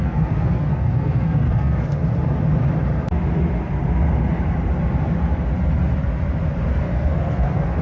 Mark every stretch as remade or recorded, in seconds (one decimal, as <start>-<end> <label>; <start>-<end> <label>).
0.0-2.0 remade; 2.0-6.7 recorded; 6.7-7.8 remade